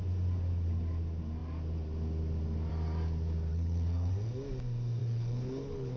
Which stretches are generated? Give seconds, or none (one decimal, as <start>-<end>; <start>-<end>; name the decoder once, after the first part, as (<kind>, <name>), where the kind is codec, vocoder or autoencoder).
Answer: 3.5-4.1 (codec, HILCodec); 5.0-6.0